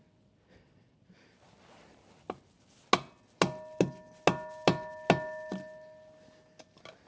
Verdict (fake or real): real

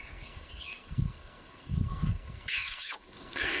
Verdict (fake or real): fake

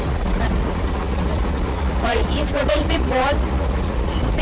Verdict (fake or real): fake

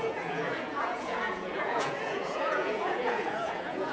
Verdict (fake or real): fake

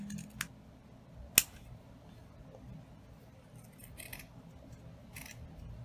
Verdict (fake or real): real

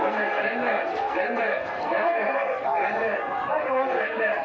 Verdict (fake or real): fake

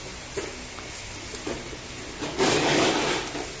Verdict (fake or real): real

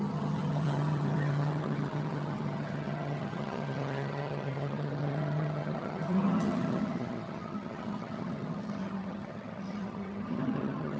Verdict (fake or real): fake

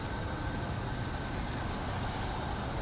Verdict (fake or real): real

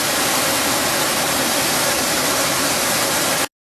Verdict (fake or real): real